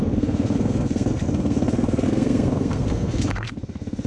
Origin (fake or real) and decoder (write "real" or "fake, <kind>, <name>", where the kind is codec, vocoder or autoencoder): fake, codec, SNAC